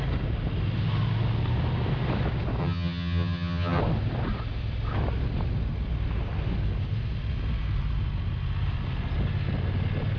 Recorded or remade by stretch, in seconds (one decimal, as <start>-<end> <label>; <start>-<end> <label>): 0.0-2.6 recorded; 2.6-3.8 remade; 3.8-10.2 recorded